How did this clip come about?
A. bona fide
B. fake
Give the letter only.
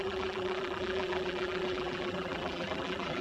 B